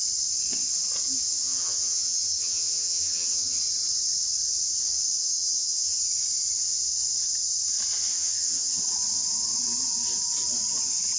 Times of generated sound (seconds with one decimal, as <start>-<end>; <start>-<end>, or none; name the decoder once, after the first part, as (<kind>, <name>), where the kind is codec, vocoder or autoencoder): 1.3-3.6 (vocoder, HiFi-GAN); 5.2-6.0; 8.1-8.8